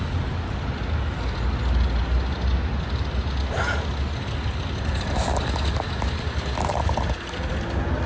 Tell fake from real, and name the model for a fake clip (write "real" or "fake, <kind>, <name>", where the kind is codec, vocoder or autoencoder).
real